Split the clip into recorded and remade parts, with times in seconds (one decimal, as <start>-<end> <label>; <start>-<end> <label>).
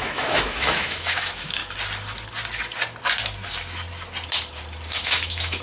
0.0-1.6 remade; 1.6-5.0 recorded; 5.0-5.6 remade